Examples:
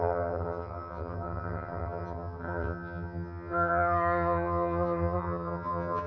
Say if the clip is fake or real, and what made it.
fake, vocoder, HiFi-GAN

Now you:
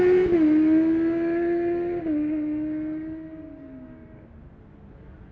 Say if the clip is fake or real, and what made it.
real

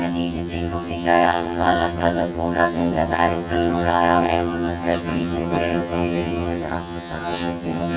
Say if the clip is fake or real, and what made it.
fake, vocoder, HiFi-GAN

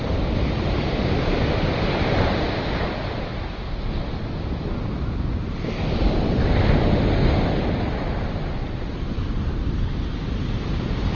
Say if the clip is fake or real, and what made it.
real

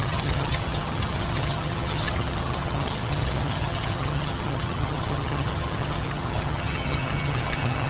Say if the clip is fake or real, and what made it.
fake, vocoder, HiFi-GAN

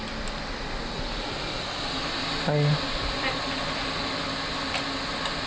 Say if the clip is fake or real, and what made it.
real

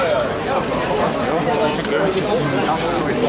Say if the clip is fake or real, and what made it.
real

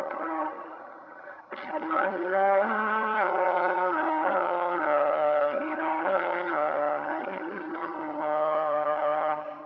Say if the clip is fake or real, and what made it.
fake, vocoder, HiFi-GAN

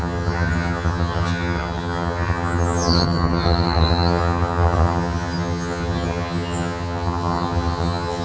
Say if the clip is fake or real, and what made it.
fake, vocoder, HiFi-GAN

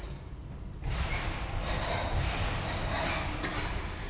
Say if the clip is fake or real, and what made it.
real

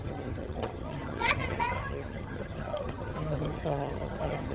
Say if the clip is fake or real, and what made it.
fake, vocoder, HiFi-GAN